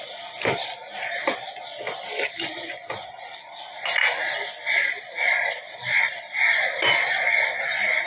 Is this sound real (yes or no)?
no